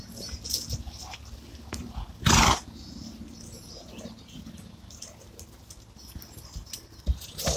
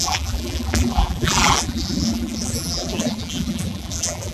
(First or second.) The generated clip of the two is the second